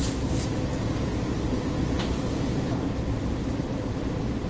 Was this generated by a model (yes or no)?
no